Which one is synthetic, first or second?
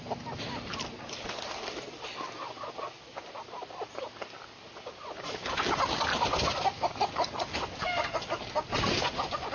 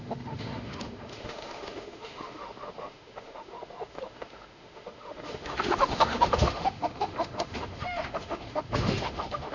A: second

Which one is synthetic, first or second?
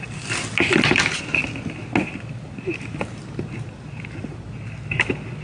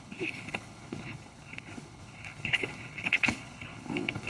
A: second